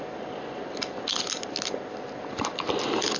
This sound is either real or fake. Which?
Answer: real